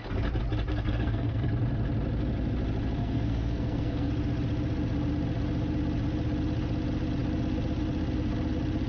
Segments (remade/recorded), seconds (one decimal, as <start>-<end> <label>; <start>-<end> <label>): 0.0-0.7 recorded; 0.7-1.5 remade; 1.5-3.0 recorded; 3.0-4.1 remade; 4.1-8.9 recorded